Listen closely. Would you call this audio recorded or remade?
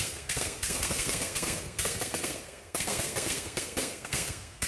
remade